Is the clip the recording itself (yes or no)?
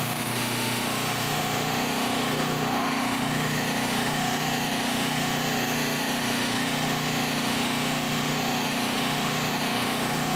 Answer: no